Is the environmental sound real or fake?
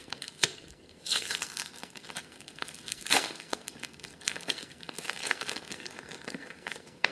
fake